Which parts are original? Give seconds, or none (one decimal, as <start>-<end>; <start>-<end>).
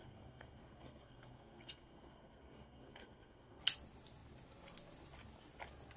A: 3.6-6.0